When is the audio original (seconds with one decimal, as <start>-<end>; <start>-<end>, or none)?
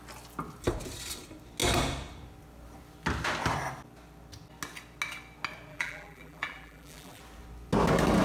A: 0.0-5.7; 7.2-8.2